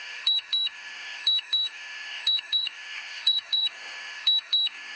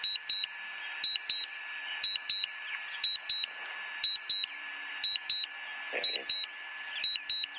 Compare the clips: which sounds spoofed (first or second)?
first